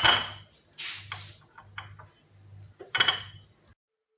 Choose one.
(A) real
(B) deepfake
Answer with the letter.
A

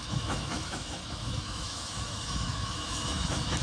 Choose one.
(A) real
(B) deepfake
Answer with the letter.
B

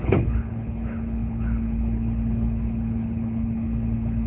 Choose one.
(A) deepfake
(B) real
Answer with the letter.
A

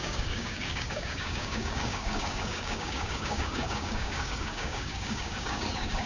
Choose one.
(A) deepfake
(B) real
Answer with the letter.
A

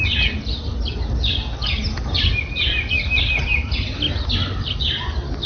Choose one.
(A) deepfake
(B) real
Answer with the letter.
B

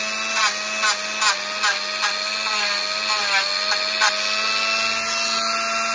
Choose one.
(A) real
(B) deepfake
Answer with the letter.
A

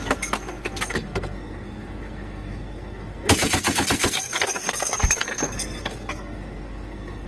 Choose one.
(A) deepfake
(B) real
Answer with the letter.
A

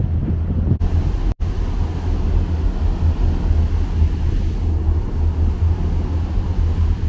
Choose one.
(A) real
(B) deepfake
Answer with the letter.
A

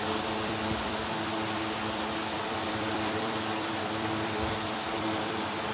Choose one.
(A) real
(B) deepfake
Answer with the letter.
B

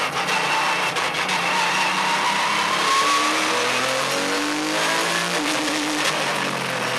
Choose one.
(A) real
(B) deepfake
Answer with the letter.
A